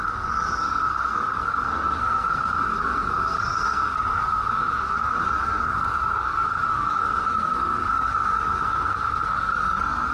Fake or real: fake